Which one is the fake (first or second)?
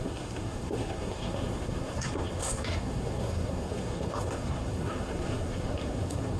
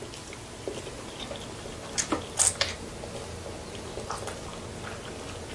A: first